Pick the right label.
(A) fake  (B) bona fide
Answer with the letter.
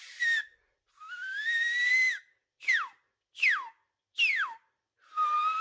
B